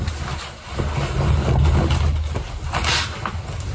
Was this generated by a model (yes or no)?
no